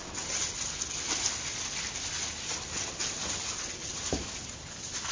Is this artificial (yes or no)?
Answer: no